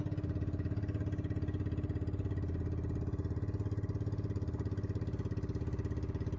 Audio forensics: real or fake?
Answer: real